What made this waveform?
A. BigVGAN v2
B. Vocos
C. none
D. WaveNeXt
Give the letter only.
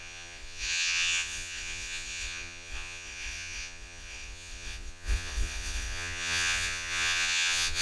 B